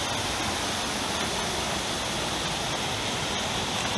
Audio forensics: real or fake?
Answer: real